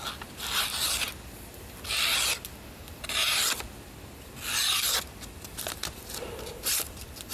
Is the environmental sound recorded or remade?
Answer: recorded